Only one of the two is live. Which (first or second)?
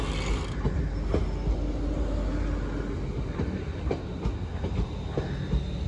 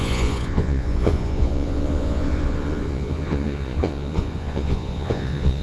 first